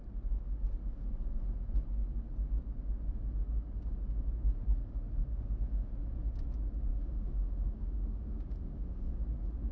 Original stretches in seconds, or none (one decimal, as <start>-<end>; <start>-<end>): 0.0-5.2; 5.9-6.9; 9.1-9.7